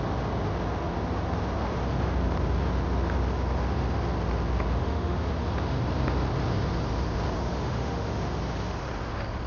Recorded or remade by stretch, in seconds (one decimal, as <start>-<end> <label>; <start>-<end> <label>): 0.0-4.8 recorded; 4.8-5.3 remade; 5.3-7.5 recorded; 7.5-8.1 remade; 8.1-9.5 recorded